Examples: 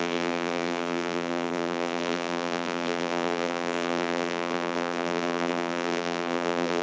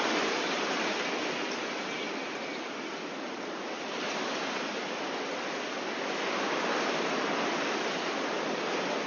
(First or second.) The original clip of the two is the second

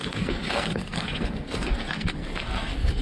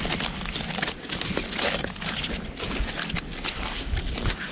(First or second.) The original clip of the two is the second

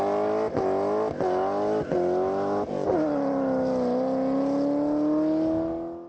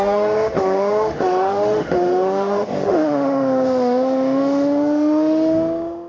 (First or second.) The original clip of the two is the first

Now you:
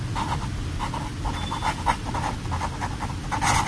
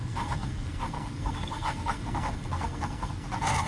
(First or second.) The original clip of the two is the first